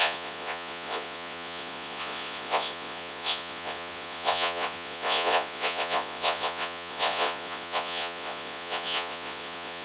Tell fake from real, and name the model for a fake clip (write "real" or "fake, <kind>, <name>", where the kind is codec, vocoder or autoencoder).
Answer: fake, vocoder, Vocos